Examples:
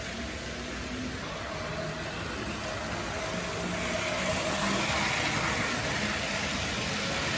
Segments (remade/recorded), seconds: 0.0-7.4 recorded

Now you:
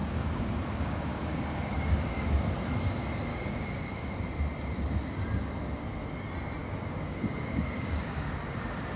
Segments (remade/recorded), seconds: 0.0-2.5 remade; 2.5-3.3 recorded; 3.3-4.2 remade; 4.2-6.6 recorded; 6.6-8.6 remade; 8.6-9.0 recorded

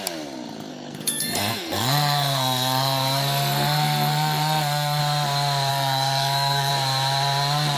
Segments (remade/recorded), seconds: 0.0-0.7 recorded; 0.7-5.0 remade; 5.0-5.7 recorded; 5.7-6.7 remade; 6.7-7.8 recorded

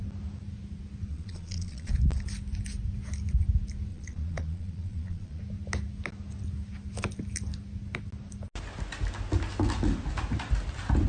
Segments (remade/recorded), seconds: 0.0-1.1 recorded; 1.1-1.9 remade; 1.9-3.9 recorded; 3.9-5.4 remade; 5.4-11.1 recorded

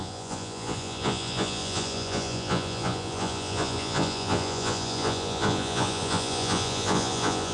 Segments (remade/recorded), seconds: 0.0-7.5 remade

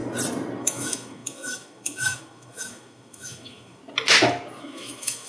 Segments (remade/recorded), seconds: 0.0-0.6 recorded; 0.6-3.8 remade; 3.8-4.6 recorded; 4.6-5.3 remade

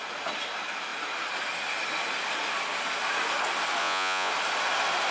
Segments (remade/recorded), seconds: 0.0-3.8 recorded; 3.8-4.3 remade; 4.3-5.1 recorded

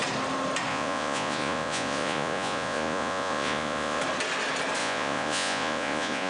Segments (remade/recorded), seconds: 0.0-0.7 recorded; 0.7-4.0 remade; 4.0-4.8 recorded; 4.8-6.3 remade